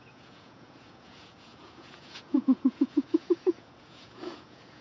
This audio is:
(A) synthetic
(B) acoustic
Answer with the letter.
A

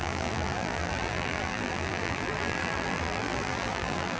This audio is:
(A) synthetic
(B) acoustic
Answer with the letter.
A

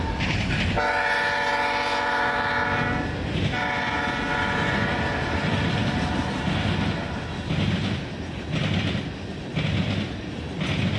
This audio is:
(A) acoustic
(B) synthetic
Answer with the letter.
A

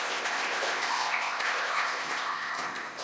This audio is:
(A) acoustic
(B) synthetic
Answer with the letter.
B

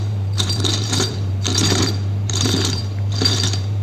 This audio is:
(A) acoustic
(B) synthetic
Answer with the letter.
B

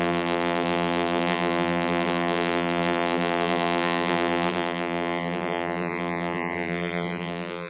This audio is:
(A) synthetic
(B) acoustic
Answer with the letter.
A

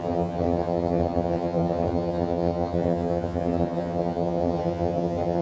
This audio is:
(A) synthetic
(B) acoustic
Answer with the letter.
A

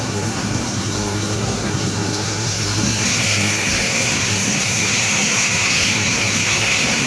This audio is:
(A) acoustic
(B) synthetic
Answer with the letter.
B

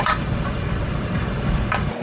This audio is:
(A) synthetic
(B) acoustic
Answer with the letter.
A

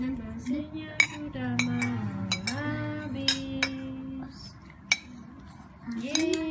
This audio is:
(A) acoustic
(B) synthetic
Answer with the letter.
A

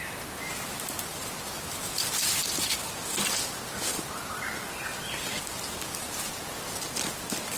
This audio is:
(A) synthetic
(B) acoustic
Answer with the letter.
B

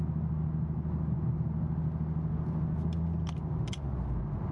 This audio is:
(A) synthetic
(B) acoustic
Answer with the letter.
B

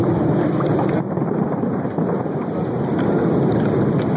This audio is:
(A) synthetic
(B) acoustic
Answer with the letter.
A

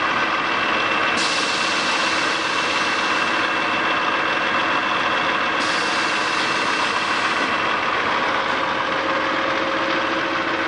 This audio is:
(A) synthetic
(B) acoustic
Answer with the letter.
B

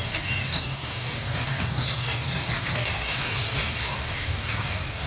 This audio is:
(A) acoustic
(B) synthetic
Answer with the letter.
B